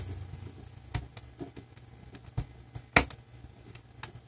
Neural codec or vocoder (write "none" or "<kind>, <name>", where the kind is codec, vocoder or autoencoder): none